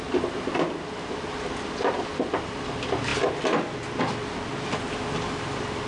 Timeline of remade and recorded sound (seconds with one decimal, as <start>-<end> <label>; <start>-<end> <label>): 0.0-5.9 recorded